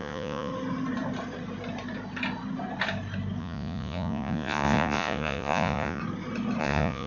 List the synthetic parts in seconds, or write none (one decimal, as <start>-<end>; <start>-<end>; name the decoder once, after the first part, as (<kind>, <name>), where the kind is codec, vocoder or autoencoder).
0.0-0.5 (vocoder, Vocos); 3.4-6.0; 6.6-7.1